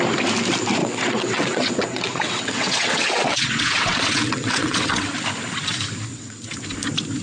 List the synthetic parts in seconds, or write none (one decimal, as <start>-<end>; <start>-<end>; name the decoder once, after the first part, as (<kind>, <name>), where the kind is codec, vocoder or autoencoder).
0.8-5.1 (vocoder, WaveNeXt); 6.1-6.6